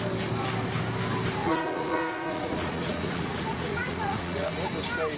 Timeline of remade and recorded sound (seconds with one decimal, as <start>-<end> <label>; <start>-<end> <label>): 0.0-1.4 recorded; 1.4-4.5 remade; 4.5-5.2 recorded